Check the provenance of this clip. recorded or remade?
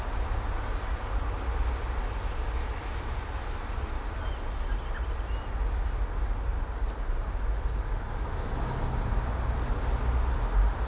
recorded